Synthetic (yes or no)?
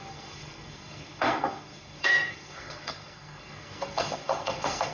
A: yes